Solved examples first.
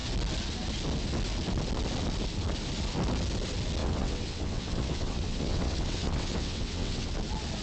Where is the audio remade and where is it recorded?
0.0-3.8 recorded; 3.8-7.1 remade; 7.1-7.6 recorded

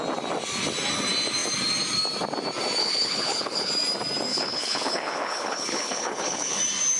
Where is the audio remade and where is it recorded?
0.0-2.8 recorded; 2.8-3.7 remade; 3.7-4.3 recorded; 4.3-6.6 remade; 6.6-7.0 recorded

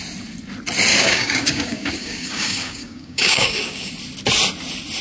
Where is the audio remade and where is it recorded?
0.0-0.9 recorded; 0.9-3.9 remade; 3.9-5.0 recorded

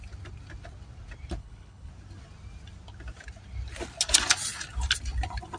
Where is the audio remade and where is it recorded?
0.0-1.4 recorded; 1.4-1.9 remade; 1.9-5.6 recorded

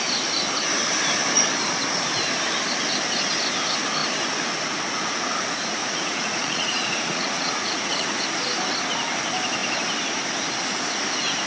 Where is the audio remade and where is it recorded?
0.0-5.8 recorded; 5.8-8.2 remade; 8.2-11.5 recorded

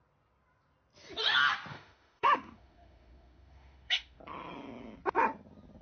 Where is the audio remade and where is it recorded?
0.0-1.7 recorded; 1.7-4.2 remade; 4.2-5.8 recorded

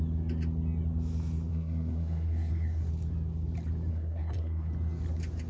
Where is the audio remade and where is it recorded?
0.0-1.5 recorded; 1.5-2.9 remade; 2.9-3.9 recorded; 3.9-4.7 remade; 4.7-5.5 recorded